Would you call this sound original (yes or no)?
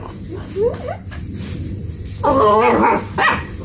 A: yes